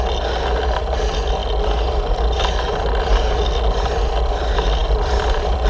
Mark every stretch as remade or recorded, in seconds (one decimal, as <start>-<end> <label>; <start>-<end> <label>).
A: 0.0-4.8 recorded; 4.8-5.7 remade